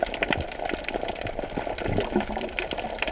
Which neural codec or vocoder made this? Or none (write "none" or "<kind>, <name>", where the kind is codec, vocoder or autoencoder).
none